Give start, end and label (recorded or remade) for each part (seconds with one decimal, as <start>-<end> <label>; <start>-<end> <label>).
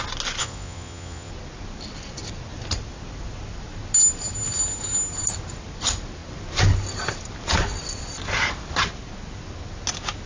0.0-0.4 recorded; 0.4-1.3 remade; 1.3-10.3 recorded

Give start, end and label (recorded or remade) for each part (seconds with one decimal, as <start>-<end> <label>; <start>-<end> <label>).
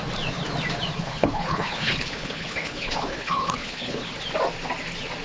0.0-1.0 recorded; 1.0-4.1 remade; 4.1-5.2 recorded